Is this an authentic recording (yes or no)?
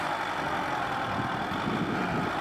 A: yes